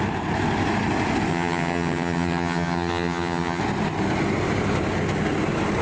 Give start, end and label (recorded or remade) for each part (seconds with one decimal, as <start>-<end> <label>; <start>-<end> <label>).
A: 0.0-1.3 recorded; 1.3-3.6 remade; 3.6-5.8 recorded